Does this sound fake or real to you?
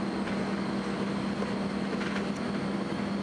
real